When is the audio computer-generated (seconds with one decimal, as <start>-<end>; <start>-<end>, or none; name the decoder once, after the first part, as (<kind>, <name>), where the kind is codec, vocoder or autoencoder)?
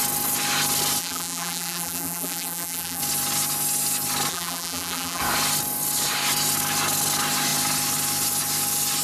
1.0-3.0 (vocoder, BigVGAN v2); 4.3-5.2